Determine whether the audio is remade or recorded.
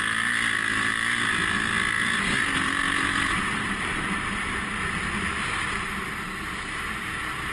recorded